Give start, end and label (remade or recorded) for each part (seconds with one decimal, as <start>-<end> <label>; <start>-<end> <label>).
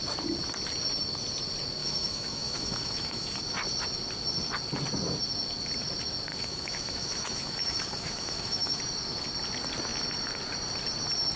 0.0-1.8 recorded; 1.8-3.4 remade; 3.4-6.3 recorded; 6.3-8.8 remade; 8.8-11.4 recorded